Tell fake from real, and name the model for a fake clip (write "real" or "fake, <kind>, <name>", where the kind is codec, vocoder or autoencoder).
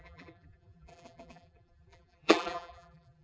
fake, vocoder, BigVGAN v2